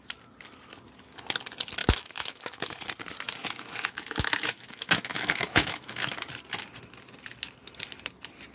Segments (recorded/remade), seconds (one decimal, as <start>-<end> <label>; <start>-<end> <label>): 0.0-1.8 recorded; 1.8-2.7 remade; 2.7-3.4 recorded; 3.4-6.1 remade; 6.1-8.5 recorded